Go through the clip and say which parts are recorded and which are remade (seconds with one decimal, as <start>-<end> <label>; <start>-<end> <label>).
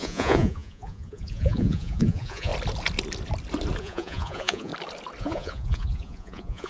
0.0-2.5 remade; 2.5-3.8 recorded; 3.8-4.7 remade; 4.7-5.2 recorded; 5.2-6.7 remade